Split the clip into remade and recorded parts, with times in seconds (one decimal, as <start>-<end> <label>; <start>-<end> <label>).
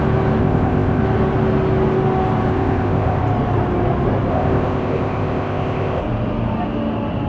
0.0-0.4 recorded; 0.4-1.0 remade; 1.0-2.5 recorded; 2.5-3.2 remade; 3.2-4.3 recorded; 4.3-6.0 remade; 6.0-7.3 recorded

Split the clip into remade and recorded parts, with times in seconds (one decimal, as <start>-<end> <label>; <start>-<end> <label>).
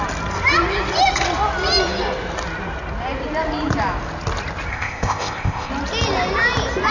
0.0-4.7 recorded; 4.7-5.7 remade; 5.7-6.9 recorded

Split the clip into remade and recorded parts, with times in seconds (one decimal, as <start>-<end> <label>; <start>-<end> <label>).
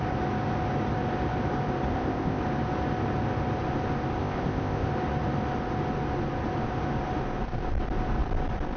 0.0-1.9 recorded; 1.9-2.4 remade; 2.4-4.2 recorded; 4.2-4.9 remade; 4.9-8.8 recorded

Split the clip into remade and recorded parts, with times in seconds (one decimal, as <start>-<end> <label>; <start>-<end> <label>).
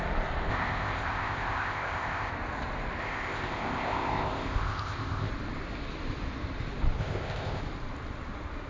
0.0-0.5 recorded; 0.5-2.3 remade; 2.3-3.0 recorded; 3.0-5.3 remade; 5.3-7.0 recorded; 7.0-7.6 remade; 7.6-8.7 recorded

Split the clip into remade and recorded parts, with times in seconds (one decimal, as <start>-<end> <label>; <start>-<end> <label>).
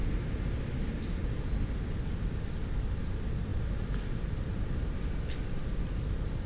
0.0-6.5 recorded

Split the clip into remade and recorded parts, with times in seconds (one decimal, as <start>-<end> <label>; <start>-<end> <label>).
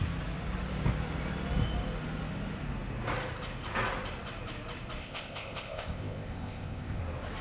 0.0-5.0 recorded; 5.0-7.0 remade; 7.0-7.4 recorded